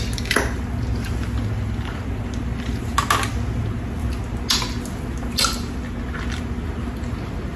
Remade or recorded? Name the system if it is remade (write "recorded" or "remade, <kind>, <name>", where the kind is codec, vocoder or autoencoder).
recorded